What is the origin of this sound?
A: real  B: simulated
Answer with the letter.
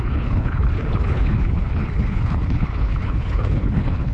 B